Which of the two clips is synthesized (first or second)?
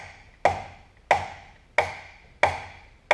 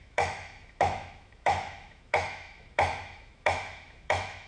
second